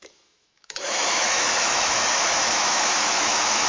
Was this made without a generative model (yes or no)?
no